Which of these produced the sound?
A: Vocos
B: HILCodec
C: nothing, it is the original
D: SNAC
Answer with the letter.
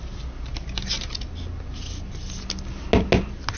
C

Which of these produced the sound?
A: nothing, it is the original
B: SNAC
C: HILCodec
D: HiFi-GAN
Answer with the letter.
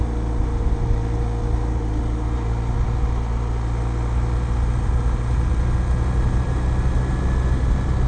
A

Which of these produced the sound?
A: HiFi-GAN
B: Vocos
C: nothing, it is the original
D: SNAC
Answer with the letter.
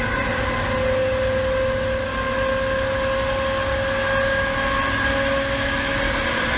C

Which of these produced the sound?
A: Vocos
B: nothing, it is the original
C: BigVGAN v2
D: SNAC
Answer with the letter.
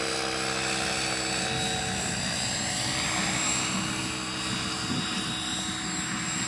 B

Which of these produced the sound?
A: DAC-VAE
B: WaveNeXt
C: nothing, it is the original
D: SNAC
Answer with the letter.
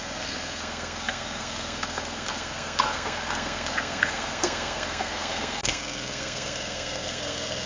D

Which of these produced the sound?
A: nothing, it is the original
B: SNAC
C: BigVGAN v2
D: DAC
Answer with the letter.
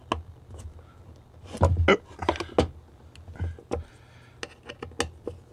A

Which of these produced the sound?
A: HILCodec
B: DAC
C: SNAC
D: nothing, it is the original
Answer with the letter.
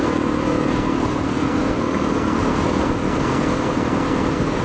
C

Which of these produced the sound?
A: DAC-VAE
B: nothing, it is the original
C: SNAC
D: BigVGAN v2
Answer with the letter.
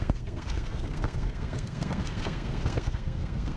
C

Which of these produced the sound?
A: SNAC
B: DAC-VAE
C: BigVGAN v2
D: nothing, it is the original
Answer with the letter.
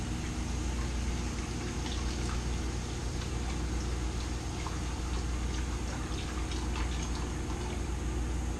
D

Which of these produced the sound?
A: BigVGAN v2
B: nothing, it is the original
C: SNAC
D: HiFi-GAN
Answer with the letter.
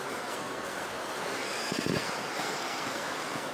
C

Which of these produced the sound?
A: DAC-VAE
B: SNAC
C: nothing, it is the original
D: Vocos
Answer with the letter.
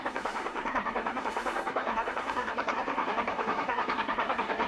B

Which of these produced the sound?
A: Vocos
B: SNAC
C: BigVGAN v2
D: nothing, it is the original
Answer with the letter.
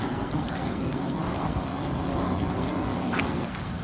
B